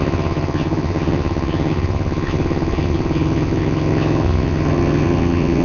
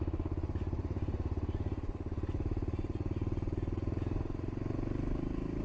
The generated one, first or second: first